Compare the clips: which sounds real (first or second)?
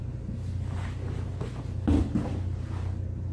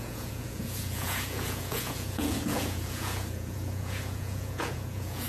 first